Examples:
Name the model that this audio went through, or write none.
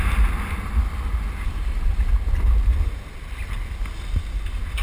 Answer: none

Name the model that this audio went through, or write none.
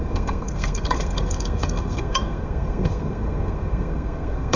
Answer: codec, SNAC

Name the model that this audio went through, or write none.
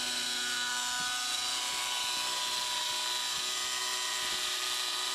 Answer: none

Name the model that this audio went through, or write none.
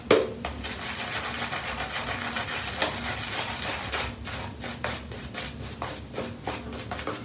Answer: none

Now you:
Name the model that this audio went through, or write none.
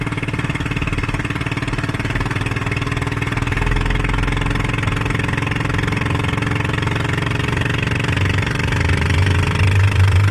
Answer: none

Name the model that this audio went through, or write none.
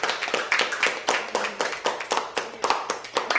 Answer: none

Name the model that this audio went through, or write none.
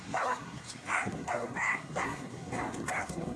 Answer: codec, SNAC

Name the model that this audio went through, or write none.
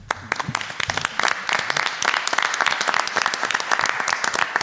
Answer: none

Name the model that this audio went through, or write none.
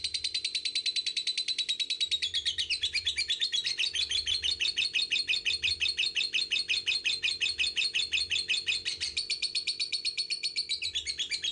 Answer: none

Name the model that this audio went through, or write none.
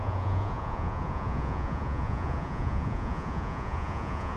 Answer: vocoder, Vocos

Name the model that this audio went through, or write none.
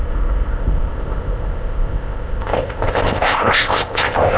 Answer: codec, ZipCodec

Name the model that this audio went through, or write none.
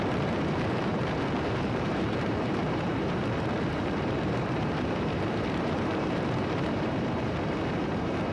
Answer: vocoder, BigVGAN v2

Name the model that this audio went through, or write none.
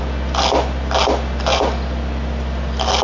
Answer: none